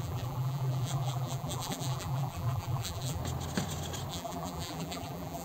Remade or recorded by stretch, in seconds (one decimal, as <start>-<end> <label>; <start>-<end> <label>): 0.0-3.2 remade; 3.2-4.1 recorded; 4.1-5.4 remade